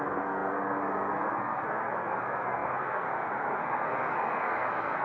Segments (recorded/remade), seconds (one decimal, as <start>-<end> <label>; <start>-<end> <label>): 0.0-5.0 remade